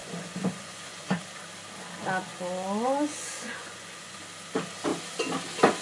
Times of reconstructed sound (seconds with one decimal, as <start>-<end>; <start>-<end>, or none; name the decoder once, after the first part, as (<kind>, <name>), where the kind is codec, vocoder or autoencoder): 0.0-1.1 (vocoder, Vocos); 2.3-4.2